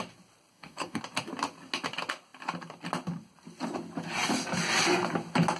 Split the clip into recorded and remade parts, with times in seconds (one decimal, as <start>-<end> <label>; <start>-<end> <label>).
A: 0.0-0.5 recorded; 0.5-1.0 remade; 1.0-5.6 recorded